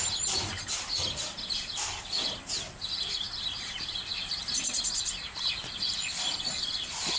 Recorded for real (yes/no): yes